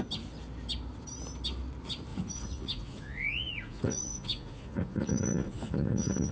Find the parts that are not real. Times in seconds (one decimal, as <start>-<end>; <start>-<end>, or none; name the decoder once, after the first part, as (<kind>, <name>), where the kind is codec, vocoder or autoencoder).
2.1-6.3 (vocoder, Vocos)